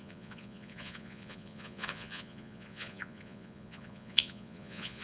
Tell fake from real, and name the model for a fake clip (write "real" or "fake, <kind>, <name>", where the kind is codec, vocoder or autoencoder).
fake, vocoder, Vocos